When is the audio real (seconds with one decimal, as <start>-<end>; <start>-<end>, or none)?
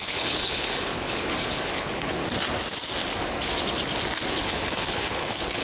2.2-4.3